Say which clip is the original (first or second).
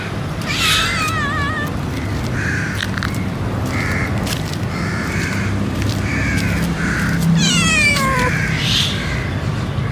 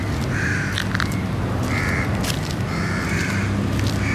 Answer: second